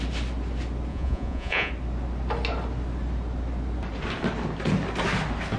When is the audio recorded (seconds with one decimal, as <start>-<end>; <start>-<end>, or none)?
0.0-0.9; 1.7-5.6